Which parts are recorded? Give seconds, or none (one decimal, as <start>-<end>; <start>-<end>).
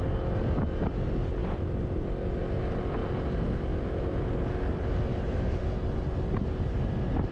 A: 0.0-5.1; 5.6-7.3